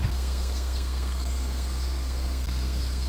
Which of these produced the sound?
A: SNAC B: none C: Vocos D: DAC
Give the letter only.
A